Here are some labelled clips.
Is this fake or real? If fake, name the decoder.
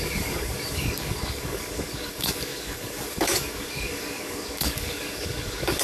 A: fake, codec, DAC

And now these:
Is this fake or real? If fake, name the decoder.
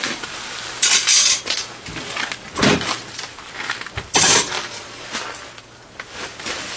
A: real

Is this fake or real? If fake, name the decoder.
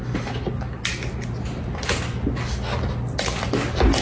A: real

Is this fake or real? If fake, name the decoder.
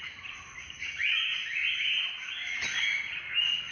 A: real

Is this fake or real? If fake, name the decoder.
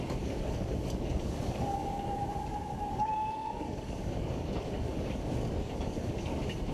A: fake, codec, DAC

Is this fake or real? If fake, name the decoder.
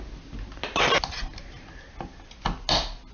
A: real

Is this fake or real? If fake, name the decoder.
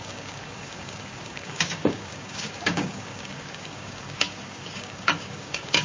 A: fake, codec, DAC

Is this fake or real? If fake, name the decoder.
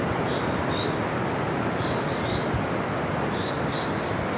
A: real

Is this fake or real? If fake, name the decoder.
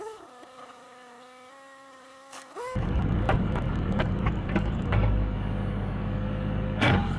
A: fake, codec, DAC